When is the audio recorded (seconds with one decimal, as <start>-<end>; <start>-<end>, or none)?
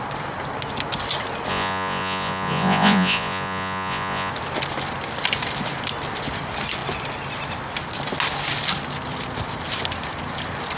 0.0-1.5; 4.3-10.8